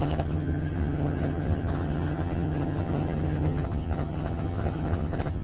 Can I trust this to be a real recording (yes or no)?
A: no